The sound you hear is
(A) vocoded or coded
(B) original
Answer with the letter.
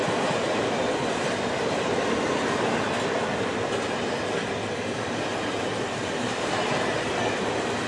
B